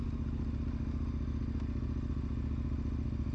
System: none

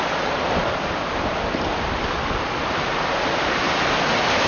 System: none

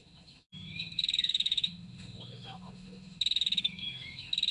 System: autoencoder, DAC-VAE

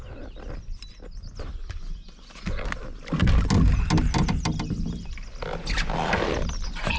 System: none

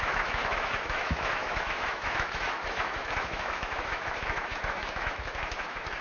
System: autoencoder, DAC-VAE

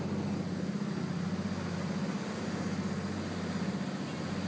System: none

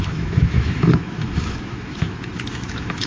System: autoencoder, DAC-VAE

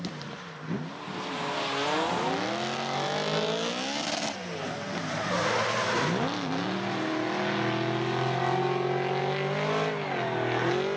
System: none